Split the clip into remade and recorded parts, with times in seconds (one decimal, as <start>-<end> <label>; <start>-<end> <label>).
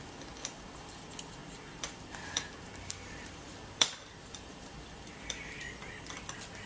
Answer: 0.0-1.4 recorded; 1.4-5.4 remade; 5.4-6.7 recorded